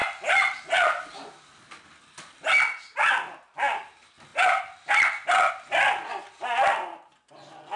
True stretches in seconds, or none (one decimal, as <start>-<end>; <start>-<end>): 0.0-7.8